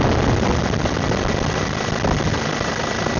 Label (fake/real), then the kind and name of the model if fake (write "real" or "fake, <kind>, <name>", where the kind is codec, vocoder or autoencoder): real